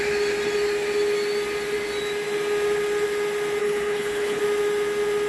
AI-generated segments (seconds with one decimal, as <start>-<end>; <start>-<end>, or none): 3.6-4.4